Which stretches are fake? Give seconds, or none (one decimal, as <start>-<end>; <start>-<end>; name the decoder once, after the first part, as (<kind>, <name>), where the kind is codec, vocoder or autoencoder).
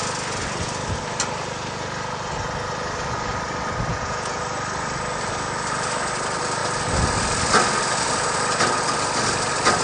3.9-4.4 (vocoder, Vocos)